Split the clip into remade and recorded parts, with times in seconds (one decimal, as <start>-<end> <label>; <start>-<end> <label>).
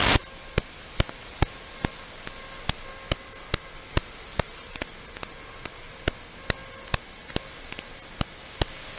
0.0-3.9 recorded; 3.9-4.9 remade; 4.9-9.0 recorded